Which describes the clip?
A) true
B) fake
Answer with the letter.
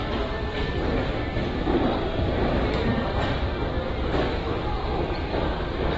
B